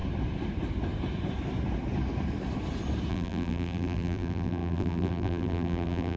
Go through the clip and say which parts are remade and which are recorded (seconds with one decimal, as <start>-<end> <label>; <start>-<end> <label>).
0.0-3.1 recorded; 3.1-6.2 remade